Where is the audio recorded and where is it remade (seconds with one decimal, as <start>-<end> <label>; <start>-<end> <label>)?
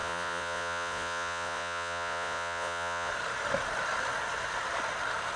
0.0-3.1 remade; 3.1-5.4 recorded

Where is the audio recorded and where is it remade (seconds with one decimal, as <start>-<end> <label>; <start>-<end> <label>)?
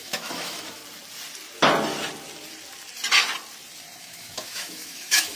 0.0-0.8 remade; 0.8-4.0 recorded; 4.0-5.4 remade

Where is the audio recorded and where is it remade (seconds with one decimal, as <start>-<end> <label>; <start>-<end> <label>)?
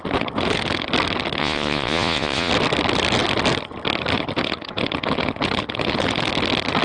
0.0-1.4 recorded; 1.4-2.5 remade; 2.5-6.8 recorded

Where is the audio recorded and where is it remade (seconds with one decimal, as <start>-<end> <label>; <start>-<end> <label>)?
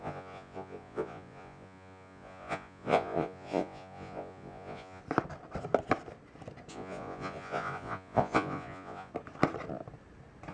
0.0-5.0 remade; 5.0-6.7 recorded; 6.7-9.1 remade; 9.1-10.5 recorded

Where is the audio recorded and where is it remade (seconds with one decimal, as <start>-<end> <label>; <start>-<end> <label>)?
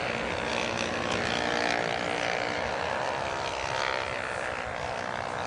0.0-5.5 recorded